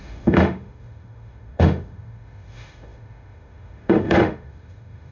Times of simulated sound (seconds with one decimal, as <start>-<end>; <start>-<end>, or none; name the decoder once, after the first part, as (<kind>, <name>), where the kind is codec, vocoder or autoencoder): 0.0-5.1 (autoencoder, DAC-VAE)